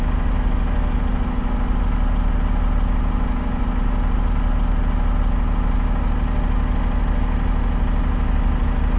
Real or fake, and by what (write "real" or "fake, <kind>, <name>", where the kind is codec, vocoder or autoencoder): real